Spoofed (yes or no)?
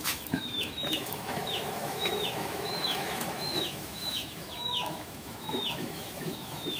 yes